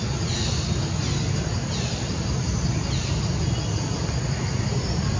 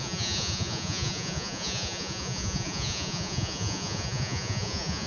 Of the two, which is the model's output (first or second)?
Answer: second